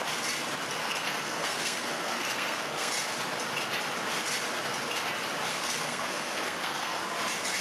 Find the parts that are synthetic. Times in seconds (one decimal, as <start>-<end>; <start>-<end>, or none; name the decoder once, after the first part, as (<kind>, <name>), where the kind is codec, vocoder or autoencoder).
0.8-2.9 (codec, SNAC); 5.5-7.0